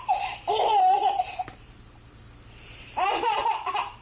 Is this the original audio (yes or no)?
no